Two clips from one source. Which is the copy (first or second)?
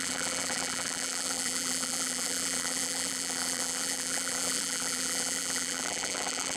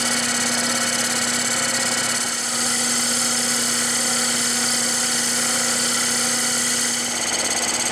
first